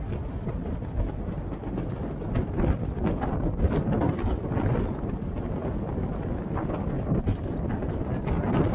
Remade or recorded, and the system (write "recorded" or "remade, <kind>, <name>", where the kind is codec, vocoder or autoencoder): recorded